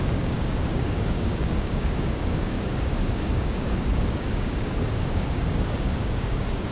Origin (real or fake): fake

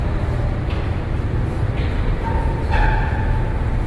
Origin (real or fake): real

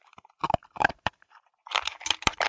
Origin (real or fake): fake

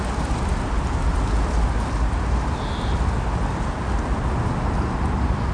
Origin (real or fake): real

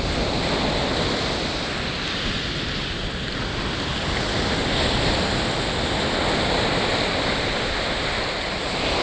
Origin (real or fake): real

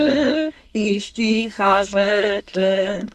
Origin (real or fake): fake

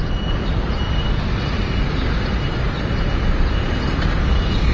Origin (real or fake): real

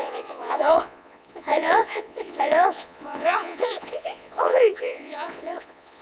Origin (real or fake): fake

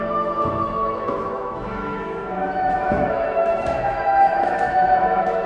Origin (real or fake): fake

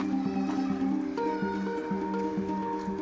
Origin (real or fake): real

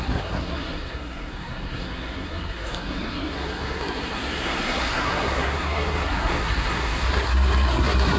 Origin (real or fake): fake